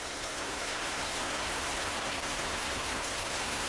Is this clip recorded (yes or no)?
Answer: no